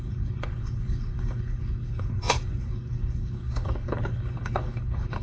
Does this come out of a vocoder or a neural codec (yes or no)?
yes